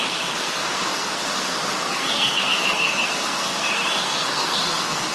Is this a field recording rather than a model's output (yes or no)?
no